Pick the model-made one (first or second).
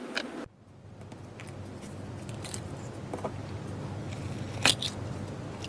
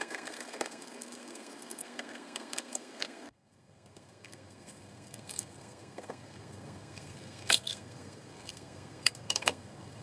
second